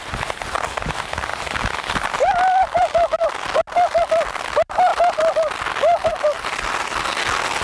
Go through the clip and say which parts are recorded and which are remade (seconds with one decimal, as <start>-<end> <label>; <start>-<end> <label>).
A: 0.0-1.3 recorded; 1.3-3.3 remade; 3.3-4.9 recorded; 4.9-5.5 remade; 5.5-6.1 recorded; 6.1-7.1 remade; 7.1-7.6 recorded